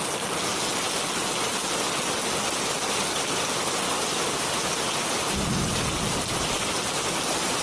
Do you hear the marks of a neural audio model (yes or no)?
no